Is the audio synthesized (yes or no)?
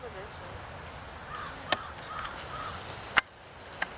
no